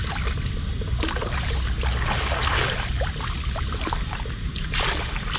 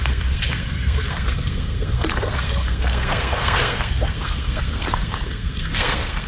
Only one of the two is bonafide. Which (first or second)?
first